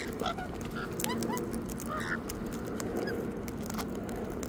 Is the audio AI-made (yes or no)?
no